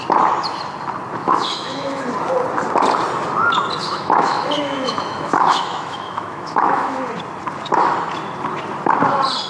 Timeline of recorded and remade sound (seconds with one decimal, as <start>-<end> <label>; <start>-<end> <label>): 0.0-1.2 recorded; 1.2-2.0 remade; 2.0-3.8 recorded; 3.8-7.1 remade; 7.1-9.5 recorded